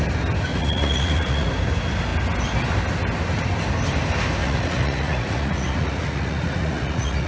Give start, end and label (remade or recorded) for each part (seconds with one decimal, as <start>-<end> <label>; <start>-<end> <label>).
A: 0.0-0.5 recorded; 0.5-1.5 remade; 1.5-4.4 recorded; 4.4-7.3 remade